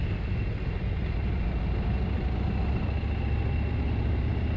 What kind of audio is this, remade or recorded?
recorded